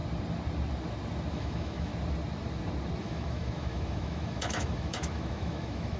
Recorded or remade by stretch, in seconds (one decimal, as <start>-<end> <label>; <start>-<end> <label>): 0.0-1.3 recorded; 1.3-1.9 remade; 1.9-3.0 recorded; 3.0-6.0 remade